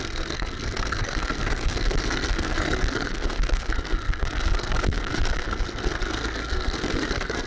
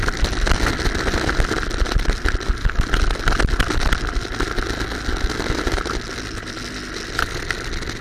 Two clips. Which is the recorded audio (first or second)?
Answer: second